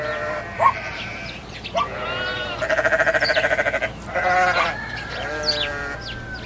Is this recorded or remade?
recorded